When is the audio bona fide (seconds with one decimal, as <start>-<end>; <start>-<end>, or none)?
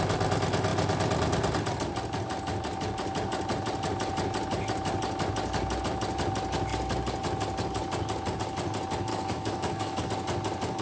0.0-9.1; 10.1-10.8